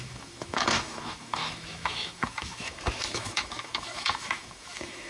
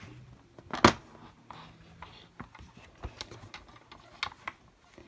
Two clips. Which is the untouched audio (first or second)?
second